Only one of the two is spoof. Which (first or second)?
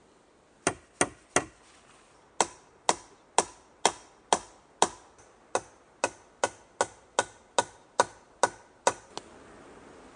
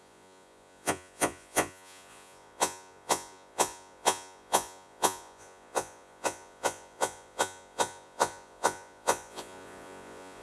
second